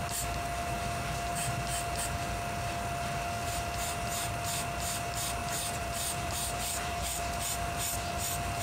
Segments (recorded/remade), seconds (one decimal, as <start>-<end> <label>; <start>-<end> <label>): 0.0-5.4 recorded; 5.4-7.3 remade; 7.3-8.6 recorded

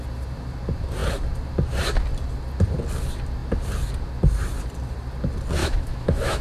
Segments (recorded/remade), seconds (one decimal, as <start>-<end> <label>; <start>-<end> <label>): 0.0-5.6 recorded; 5.6-6.4 remade

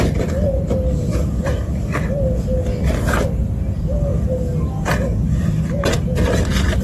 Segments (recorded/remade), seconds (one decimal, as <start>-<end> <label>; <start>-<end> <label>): 0.0-4.1 remade; 4.1-5.8 recorded; 5.8-6.8 remade